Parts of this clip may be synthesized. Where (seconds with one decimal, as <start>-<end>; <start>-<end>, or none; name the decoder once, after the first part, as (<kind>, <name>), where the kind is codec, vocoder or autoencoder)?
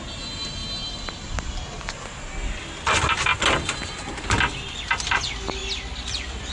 5.6-6.5 (vocoder, BigVGAN v2)